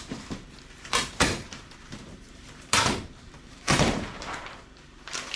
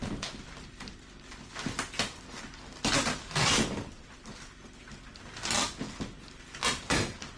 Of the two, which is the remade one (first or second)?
first